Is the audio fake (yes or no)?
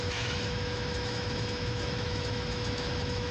yes